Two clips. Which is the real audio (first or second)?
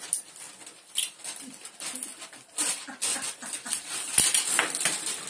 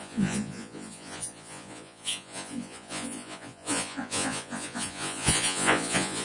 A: first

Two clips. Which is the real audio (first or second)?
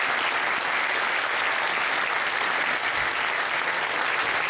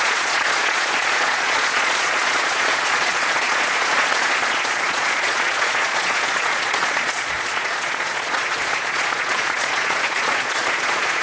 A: first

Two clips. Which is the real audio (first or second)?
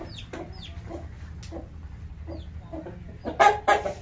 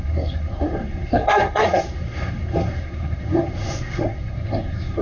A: first